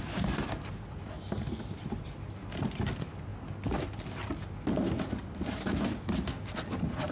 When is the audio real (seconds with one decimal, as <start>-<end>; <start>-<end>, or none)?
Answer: 0.0-7.1